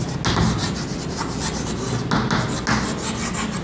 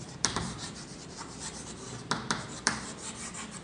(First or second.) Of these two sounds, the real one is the first